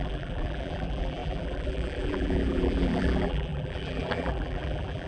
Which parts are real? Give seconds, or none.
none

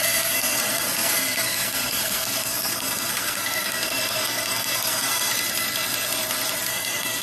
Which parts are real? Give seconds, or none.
5.3-6.6

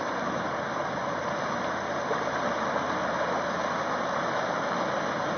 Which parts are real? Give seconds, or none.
0.8-4.0

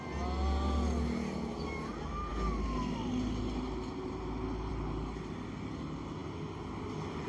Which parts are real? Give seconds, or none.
0.0-7.3

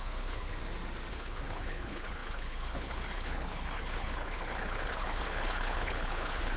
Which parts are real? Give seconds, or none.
0.6-1.1